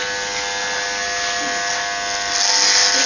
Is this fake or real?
real